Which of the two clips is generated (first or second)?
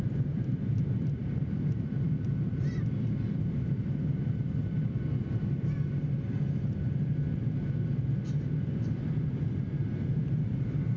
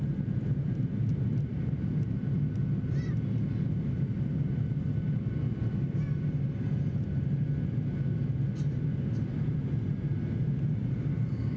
first